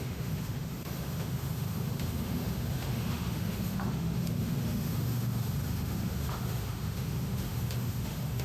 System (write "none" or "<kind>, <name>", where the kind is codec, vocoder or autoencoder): autoencoder, DAC-VAE